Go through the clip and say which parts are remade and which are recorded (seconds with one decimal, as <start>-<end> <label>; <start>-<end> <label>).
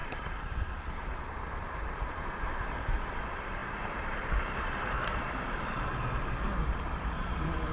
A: 0.0-7.7 remade